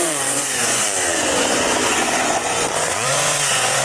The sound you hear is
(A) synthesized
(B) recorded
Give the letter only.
A